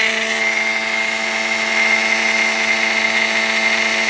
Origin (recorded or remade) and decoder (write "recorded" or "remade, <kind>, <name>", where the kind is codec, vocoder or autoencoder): recorded